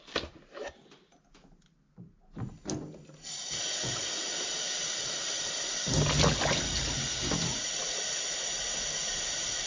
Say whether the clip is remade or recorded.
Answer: recorded